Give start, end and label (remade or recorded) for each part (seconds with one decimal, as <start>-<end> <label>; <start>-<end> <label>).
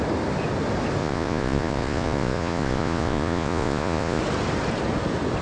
0.0-1.0 recorded; 1.0-4.2 remade; 4.2-5.4 recorded